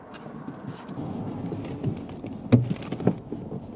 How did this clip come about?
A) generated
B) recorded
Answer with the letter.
B